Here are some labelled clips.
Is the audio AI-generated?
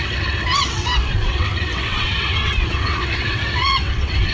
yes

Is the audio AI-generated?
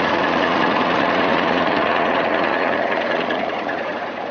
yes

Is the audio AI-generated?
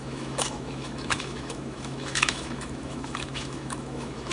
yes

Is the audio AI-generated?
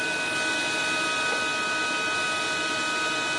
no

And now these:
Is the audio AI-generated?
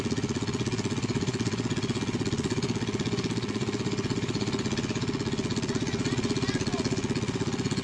yes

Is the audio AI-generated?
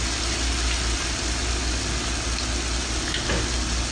no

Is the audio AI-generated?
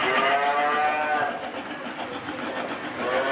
no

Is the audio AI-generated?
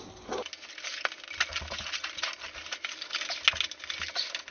no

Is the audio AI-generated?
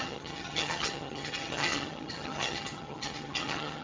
yes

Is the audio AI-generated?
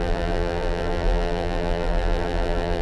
yes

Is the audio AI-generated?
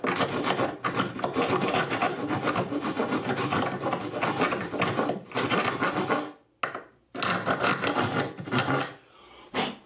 no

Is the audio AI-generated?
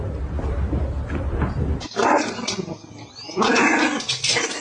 no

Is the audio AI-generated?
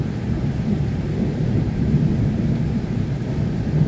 yes